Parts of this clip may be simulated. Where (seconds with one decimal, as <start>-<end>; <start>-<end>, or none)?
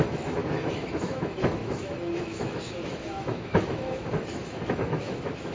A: 0.0-5.5